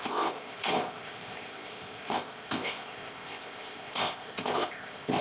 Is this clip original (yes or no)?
no